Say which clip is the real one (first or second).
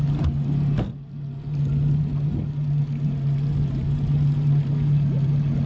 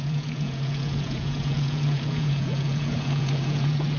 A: first